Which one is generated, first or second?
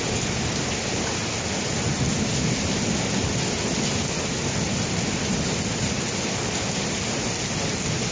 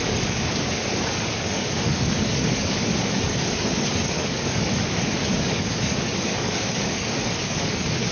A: second